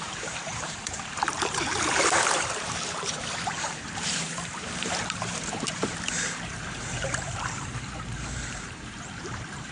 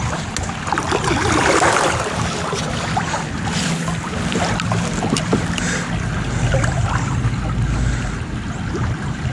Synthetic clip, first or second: first